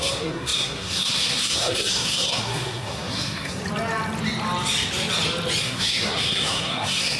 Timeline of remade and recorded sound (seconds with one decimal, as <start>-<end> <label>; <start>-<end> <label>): 0.0-3.6 remade; 3.6-5.6 recorded; 5.6-7.2 remade